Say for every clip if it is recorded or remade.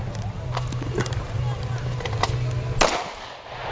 recorded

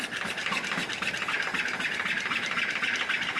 recorded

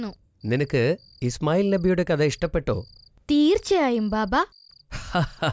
recorded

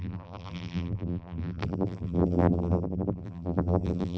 remade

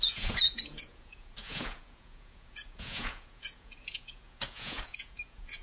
remade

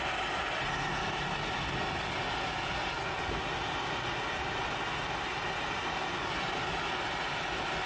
recorded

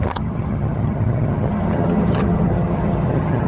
remade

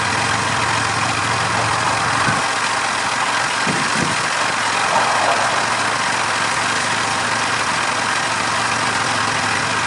recorded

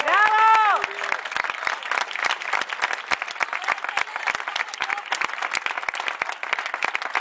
recorded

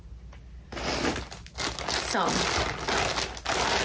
recorded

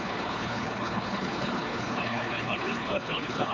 remade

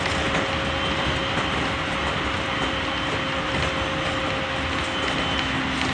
recorded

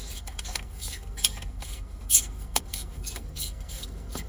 remade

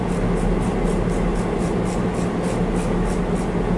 recorded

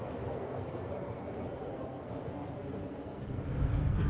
remade